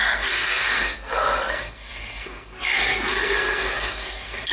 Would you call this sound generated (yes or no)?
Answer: yes